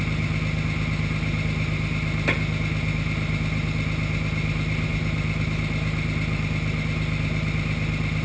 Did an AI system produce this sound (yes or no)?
no